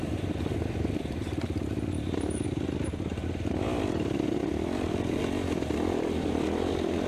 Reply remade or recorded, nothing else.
recorded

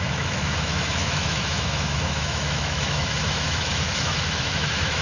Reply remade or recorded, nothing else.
remade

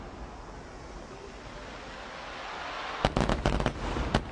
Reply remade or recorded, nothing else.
recorded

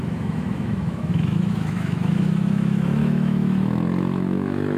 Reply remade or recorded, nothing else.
remade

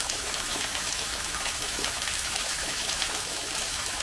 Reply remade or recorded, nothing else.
remade